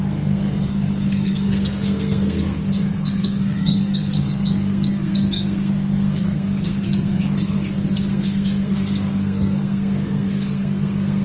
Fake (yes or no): yes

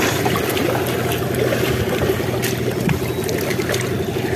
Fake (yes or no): no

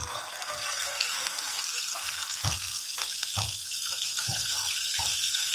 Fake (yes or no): yes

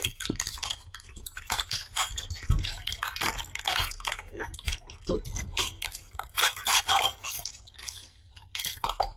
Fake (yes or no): yes